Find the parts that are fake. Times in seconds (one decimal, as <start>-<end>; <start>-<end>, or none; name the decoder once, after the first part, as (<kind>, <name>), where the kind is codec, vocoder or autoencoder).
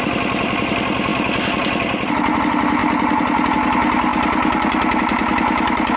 none